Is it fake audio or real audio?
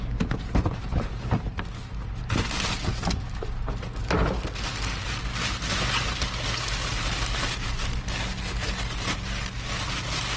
real